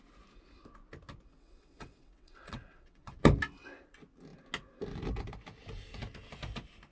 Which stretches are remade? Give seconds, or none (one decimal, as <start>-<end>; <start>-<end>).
1.3-3.2